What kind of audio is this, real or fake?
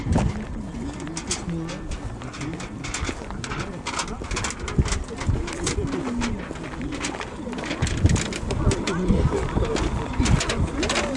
real